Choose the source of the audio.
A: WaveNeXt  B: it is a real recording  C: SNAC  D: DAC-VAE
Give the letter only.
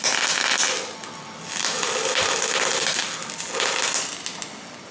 B